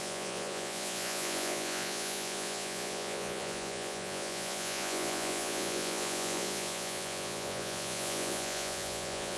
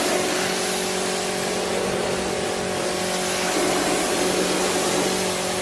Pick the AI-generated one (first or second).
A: first